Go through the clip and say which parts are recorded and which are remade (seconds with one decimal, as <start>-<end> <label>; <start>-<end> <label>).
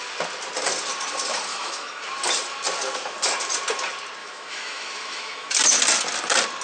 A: 0.0-1.5 recorded; 1.5-2.0 remade; 2.0-4.2 recorded; 4.2-5.5 remade; 5.5-6.6 recorded